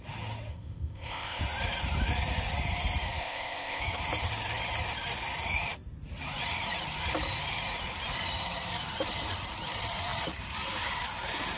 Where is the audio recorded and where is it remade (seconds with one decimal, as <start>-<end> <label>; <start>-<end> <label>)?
0.0-0.5 recorded; 0.5-1.4 remade; 1.4-3.2 recorded; 3.2-3.8 remade; 3.8-11.6 recorded